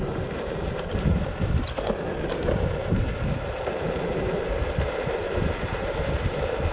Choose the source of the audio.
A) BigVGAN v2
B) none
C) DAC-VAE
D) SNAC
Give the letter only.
A